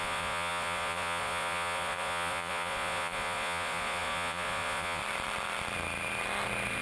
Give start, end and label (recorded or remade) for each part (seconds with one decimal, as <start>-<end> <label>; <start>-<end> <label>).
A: 0.0-5.0 remade; 5.0-6.8 recorded